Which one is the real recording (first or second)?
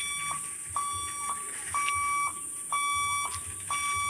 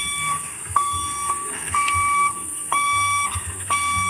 first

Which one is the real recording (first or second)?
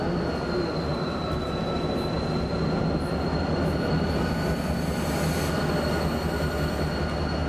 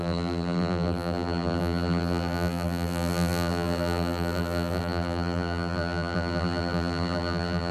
first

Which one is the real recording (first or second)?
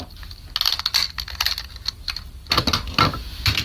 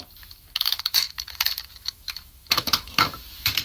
first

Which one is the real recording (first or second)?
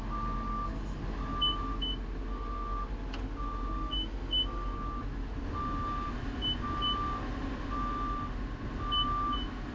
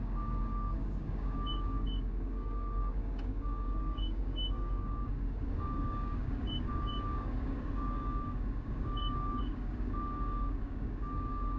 first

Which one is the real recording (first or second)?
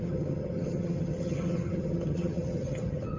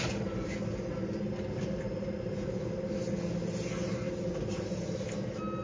second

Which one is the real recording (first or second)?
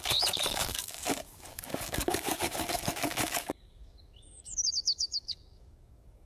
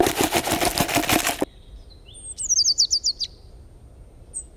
second